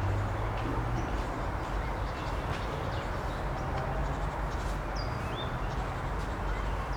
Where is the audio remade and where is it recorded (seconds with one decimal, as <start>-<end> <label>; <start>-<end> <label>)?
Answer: 0.0-7.0 recorded

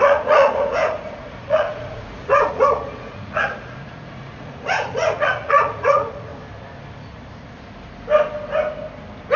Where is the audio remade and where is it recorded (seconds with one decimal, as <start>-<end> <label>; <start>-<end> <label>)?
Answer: 0.0-6.3 remade; 6.3-9.4 recorded

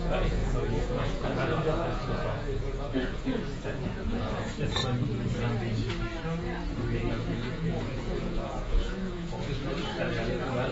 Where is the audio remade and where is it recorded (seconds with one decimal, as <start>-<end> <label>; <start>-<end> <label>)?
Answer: 0.0-4.8 remade; 4.8-7.1 recorded; 7.1-9.6 remade; 9.6-10.7 recorded

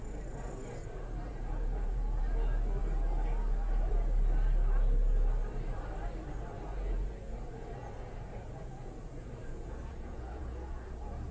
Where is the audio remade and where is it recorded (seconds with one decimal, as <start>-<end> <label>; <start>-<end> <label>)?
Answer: 0.0-0.8 recorded; 0.8-2.2 remade; 2.2-6.7 recorded; 6.7-11.3 remade